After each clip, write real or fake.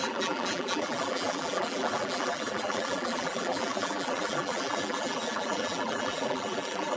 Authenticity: fake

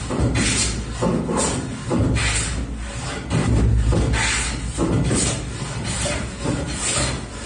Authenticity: real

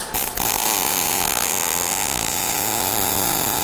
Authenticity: real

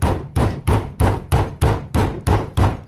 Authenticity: fake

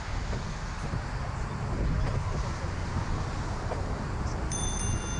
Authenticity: real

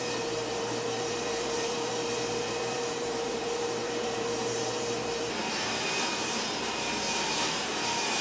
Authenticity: fake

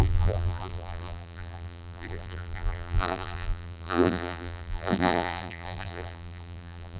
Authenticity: fake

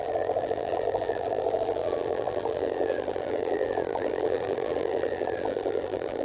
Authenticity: fake